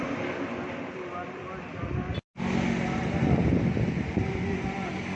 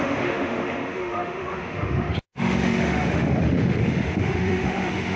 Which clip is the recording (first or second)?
first